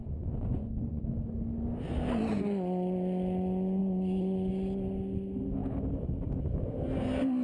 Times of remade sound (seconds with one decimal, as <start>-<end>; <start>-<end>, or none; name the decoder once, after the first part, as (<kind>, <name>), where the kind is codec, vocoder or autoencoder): 0.0-1.0 (vocoder, Vocos); 3.8-4.5